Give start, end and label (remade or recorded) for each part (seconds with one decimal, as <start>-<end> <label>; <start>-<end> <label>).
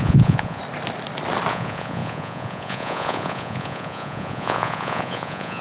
0.0-0.6 remade; 0.6-1.5 recorded; 1.5-5.6 remade